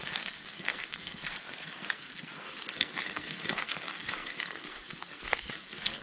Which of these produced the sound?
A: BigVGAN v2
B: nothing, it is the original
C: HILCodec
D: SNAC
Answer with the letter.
D